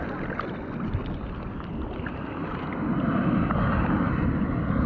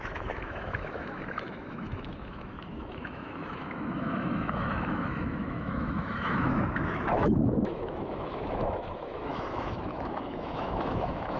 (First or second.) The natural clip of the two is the first